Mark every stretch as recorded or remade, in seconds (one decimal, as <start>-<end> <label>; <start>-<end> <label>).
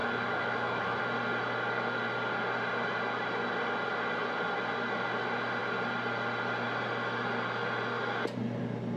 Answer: 0.0-1.0 remade; 1.0-9.0 recorded